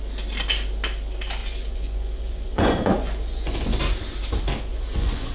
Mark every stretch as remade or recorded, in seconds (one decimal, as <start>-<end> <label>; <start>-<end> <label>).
0.0-1.4 recorded; 1.4-3.8 remade; 3.8-4.7 recorded; 4.7-5.3 remade